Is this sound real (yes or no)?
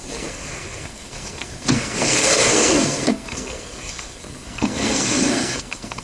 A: no